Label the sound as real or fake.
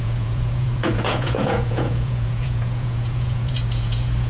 fake